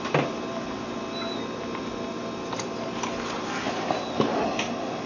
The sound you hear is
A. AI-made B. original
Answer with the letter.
B